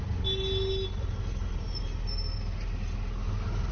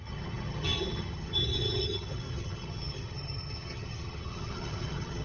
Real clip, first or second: first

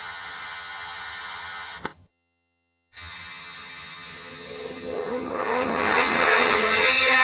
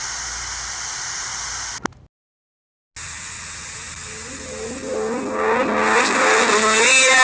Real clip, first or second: second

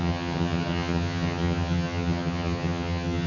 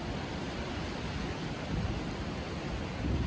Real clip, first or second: second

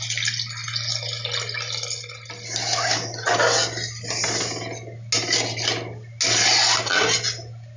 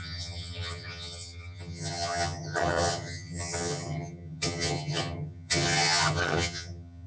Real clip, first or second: first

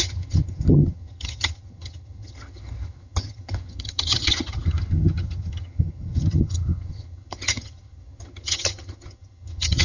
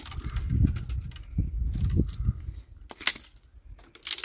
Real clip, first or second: second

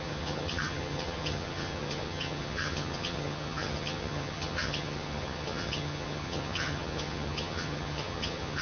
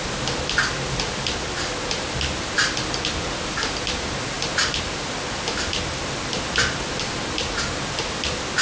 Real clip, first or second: second